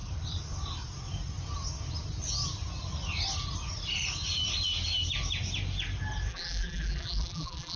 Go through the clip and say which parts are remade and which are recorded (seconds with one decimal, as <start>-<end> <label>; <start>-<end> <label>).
0.0-6.3 recorded; 6.3-7.8 remade